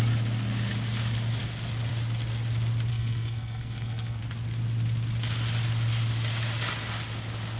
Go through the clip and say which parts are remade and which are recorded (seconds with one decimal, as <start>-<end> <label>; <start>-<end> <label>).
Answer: 0.0-2.9 recorded; 2.9-4.2 remade; 4.2-7.6 recorded